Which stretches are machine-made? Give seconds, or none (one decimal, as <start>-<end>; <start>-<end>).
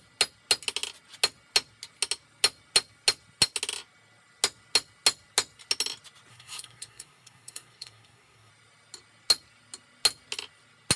6.3-8.5